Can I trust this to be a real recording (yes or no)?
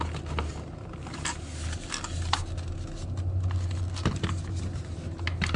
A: yes